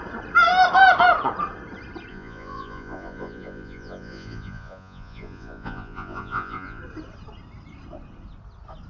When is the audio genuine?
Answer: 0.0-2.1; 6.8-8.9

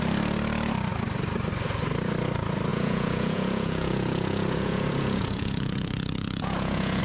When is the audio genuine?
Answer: 0.0-2.7